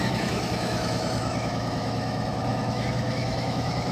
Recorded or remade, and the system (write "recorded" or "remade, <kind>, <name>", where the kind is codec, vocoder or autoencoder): remade, autoencoder, DAC-VAE